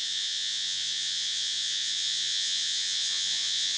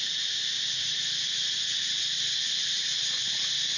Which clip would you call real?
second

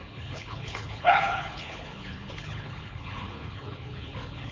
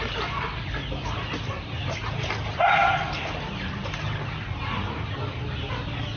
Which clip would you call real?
second